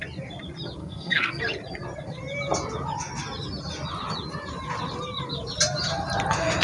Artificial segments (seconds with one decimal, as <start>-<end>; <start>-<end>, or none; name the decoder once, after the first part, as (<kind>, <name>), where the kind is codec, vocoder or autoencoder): 0.8-1.4 (codec, SNAC)